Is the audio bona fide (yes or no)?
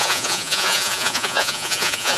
no